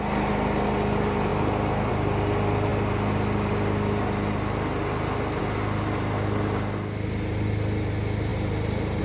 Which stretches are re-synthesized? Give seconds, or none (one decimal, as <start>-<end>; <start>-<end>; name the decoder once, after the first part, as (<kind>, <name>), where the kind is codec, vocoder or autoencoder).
none